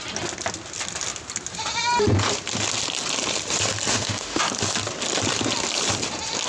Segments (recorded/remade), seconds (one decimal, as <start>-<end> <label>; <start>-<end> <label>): 0.0-3.9 recorded; 3.9-4.4 remade; 4.4-6.5 recorded